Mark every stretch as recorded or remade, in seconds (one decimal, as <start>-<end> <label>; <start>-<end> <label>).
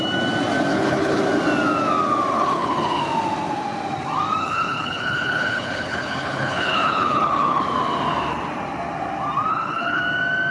0.0-0.7 recorded; 0.7-1.2 remade; 1.2-2.3 recorded; 2.3-3.0 remade; 3.0-4.4 recorded; 4.4-7.6 remade; 7.6-9.5 recorded; 9.5-10.0 remade; 10.0-10.5 recorded